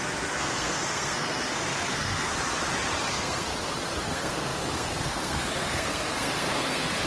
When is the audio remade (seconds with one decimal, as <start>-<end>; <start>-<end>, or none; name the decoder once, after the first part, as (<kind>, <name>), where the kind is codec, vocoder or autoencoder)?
0.0-2.3 (codec, SNAC); 3.1-3.5; 4.0-7.1